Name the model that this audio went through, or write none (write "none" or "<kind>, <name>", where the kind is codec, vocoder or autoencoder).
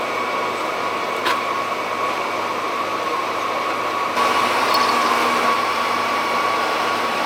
vocoder, BigVGAN v2